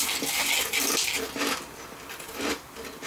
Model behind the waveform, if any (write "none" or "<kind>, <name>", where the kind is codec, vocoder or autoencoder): none